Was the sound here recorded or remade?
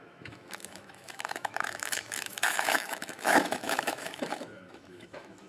remade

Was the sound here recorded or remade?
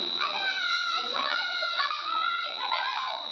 remade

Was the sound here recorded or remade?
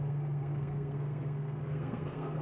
remade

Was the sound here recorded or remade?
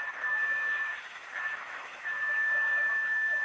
remade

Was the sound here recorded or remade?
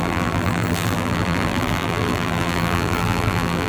remade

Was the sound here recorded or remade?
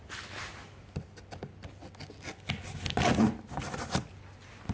recorded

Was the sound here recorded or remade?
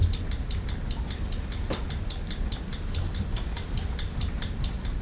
recorded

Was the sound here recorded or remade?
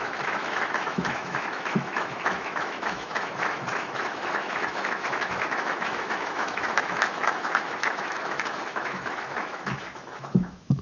remade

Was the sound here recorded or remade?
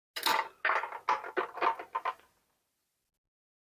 recorded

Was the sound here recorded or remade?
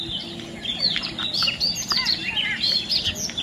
recorded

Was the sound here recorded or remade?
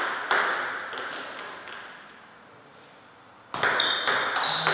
recorded